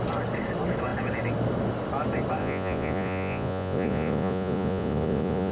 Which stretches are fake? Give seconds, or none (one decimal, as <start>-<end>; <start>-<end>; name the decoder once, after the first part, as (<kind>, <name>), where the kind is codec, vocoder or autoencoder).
2.4-5.5 (vocoder, Vocos)